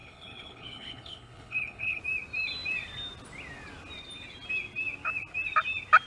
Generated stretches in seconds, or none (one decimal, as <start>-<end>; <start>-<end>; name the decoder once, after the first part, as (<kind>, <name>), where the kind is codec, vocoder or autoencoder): 0.0-2.0 (codec, HILCodec)